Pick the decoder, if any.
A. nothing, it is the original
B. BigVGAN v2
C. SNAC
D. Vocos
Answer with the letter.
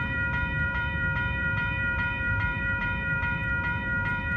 B